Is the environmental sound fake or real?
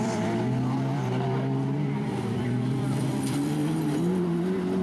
fake